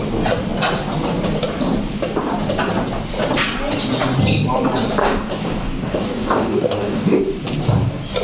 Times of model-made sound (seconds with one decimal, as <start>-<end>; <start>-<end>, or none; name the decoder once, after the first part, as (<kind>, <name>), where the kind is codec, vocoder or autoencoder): 5.0-7.2 (codec, DAC)